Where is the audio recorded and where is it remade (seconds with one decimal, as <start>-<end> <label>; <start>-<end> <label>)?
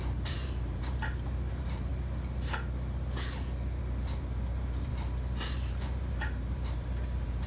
0.0-1.9 remade; 1.9-3.8 recorded; 3.8-7.5 remade